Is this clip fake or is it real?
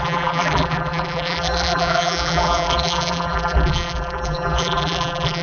fake